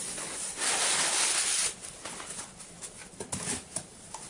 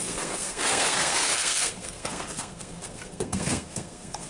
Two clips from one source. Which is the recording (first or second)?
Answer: first